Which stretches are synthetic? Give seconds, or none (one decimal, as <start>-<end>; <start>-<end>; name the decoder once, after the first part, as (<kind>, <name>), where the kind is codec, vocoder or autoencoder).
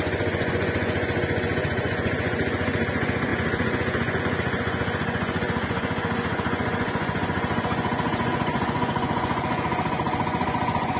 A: 0.0-11.0 (vocoder, Vocos)